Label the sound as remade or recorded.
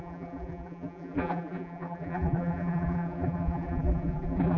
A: remade